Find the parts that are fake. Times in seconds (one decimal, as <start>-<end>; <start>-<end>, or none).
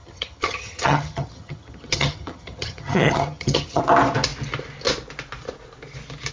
0.0-3.8